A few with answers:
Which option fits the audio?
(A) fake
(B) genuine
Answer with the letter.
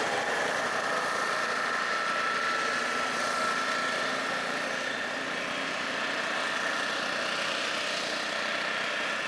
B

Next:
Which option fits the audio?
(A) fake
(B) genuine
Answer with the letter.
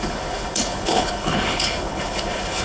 A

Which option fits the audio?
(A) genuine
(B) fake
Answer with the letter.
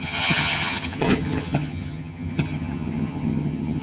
B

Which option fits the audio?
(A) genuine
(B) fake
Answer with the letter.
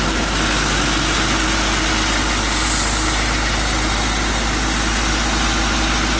A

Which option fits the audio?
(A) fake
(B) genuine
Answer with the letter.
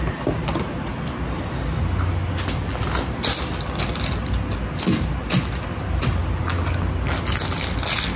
B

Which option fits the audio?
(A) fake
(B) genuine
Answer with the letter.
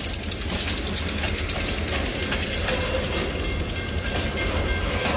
B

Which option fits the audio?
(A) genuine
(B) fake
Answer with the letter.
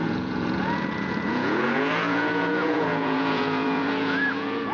B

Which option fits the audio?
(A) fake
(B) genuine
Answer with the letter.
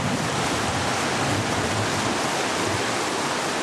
B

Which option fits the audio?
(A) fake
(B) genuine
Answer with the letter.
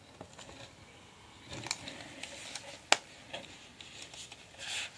B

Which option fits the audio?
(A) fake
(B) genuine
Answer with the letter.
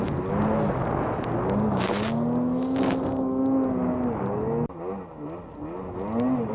B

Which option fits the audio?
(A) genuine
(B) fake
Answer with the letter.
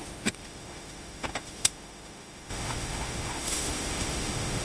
B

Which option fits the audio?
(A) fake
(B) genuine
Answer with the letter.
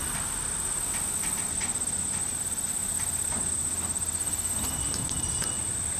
B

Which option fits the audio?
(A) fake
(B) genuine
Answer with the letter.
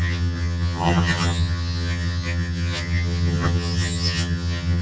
A